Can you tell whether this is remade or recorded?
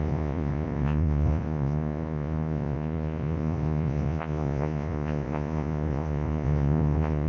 remade